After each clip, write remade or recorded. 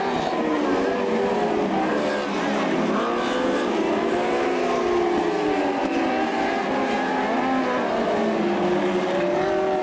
recorded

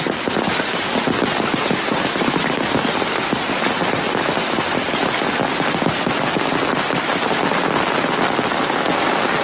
recorded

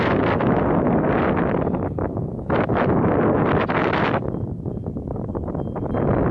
recorded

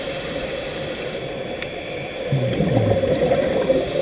recorded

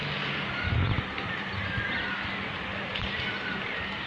recorded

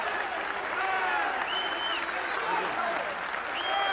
recorded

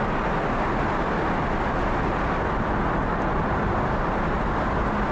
recorded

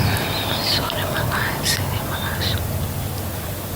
recorded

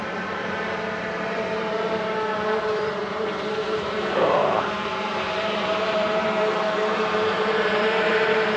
remade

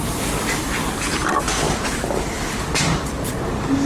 remade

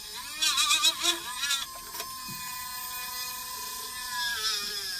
recorded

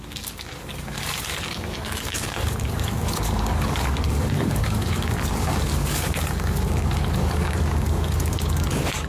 remade